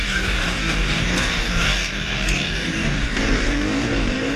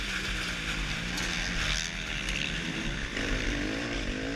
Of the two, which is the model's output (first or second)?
first